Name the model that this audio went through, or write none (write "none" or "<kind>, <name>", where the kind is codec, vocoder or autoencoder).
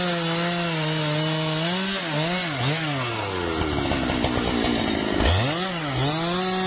none